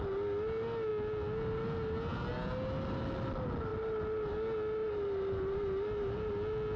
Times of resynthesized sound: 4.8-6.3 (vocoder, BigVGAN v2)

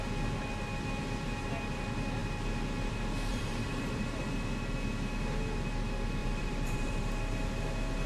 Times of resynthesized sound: 3.3-4.2 (vocoder, BigVGAN v2); 6.2-7.0

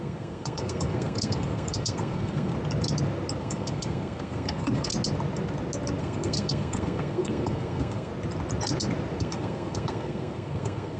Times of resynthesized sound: 0.0-2.5 (codec, SNAC); 3.4-4.9; 6.0-8.1; 9.2-11.0

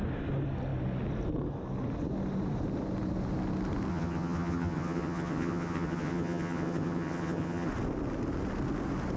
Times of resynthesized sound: 3.9-7.7 (vocoder, HiFi-GAN)

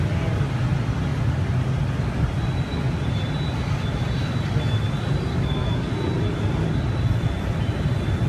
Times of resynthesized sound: 5.3-5.9 (codec, DAC)

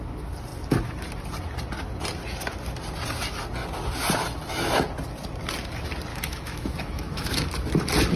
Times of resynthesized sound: 6.1-7.5 (autoencoder, DAC-VAE)

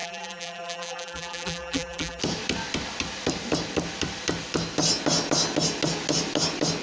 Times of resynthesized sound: 0.0-2.2 (vocoder, BigVGAN v2)

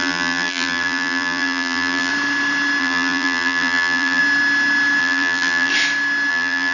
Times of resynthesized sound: 0.0-2.1 (vocoder, BigVGAN v2); 2.8-4.2; 5.0-5.7; 6.3-6.7